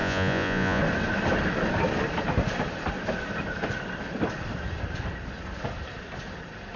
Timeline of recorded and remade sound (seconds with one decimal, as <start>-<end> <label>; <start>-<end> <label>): 0.0-0.8 remade; 0.8-6.8 recorded